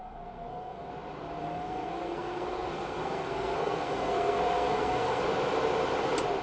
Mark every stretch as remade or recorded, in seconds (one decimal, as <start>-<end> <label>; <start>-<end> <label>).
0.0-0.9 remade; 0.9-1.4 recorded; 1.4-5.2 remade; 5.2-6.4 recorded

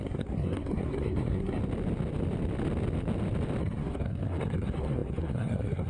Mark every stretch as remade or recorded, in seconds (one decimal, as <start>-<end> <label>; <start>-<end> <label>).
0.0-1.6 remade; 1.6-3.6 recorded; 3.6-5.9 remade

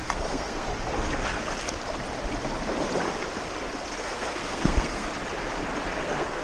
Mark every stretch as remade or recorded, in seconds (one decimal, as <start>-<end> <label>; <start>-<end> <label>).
0.0-0.7 remade; 0.7-3.9 recorded; 3.9-5.1 remade; 5.1-6.0 recorded; 6.0-6.4 remade

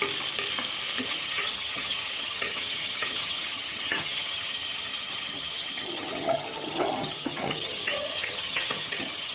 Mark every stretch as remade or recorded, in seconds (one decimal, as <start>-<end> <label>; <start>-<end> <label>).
0.0-1.0 recorded; 1.0-9.3 remade

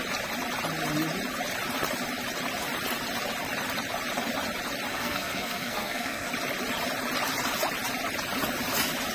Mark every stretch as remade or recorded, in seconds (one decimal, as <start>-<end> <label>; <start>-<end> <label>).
0.0-4.9 recorded; 4.9-6.3 remade; 6.3-9.1 recorded

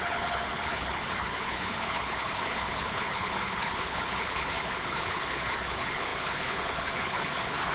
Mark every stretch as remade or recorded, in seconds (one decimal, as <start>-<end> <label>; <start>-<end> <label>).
0.0-7.7 remade

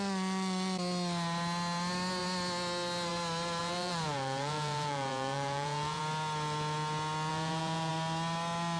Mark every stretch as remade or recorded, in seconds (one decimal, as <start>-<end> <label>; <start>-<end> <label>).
0.0-3.6 recorded; 3.6-6.0 remade; 6.0-7.3 recorded; 7.3-7.9 remade; 7.9-8.8 recorded